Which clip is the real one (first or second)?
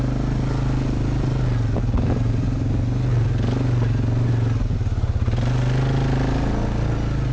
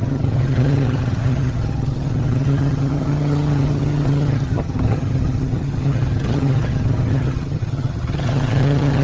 first